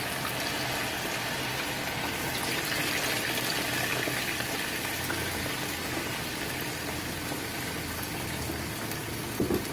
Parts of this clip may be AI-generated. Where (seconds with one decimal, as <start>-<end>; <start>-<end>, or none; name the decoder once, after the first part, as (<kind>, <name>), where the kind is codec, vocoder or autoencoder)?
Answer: none